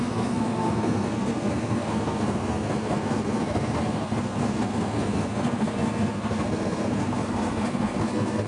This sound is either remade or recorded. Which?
remade